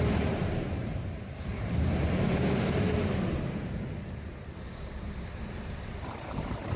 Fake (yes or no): yes